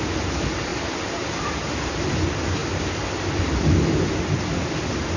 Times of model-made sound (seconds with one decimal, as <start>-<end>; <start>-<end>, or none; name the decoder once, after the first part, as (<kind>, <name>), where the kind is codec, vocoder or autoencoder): 0.7-1.9 (vocoder, BigVGAN v2)